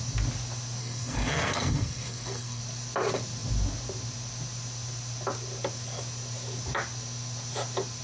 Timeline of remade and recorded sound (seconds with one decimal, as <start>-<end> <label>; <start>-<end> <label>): 0.0-0.8 recorded; 0.8-2.6 remade; 2.6-8.0 recorded